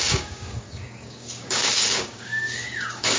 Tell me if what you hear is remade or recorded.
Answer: remade